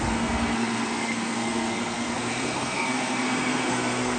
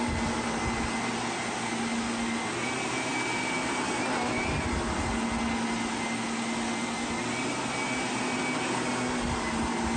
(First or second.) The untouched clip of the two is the second